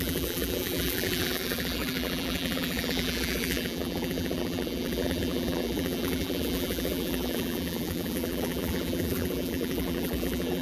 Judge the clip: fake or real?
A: fake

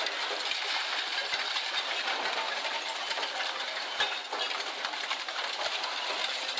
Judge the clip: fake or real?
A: real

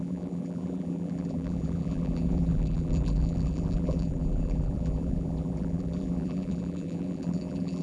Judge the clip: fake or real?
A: fake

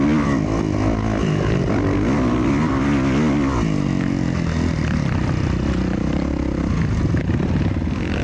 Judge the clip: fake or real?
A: real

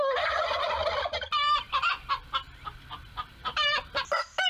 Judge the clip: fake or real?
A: real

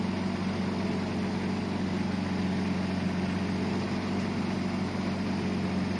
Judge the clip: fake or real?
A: real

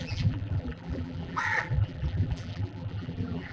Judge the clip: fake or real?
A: fake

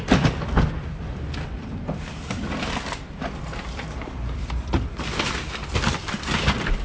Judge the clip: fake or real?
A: fake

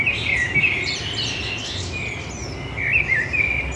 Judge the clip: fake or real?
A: real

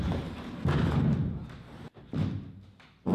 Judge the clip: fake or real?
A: real